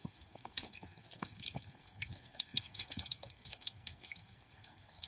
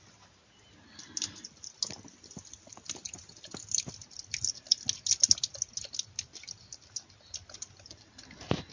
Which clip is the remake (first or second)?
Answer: first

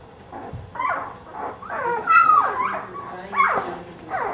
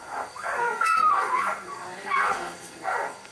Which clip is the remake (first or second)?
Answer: second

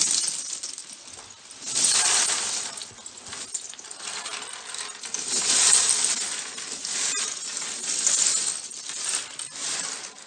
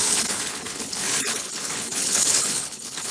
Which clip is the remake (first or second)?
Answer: second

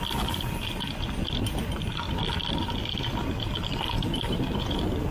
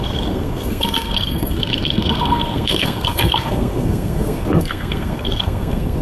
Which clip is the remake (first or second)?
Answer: second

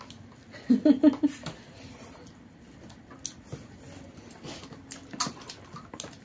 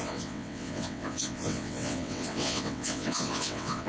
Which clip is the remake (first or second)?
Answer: second